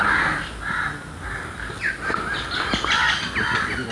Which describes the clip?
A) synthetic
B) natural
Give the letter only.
B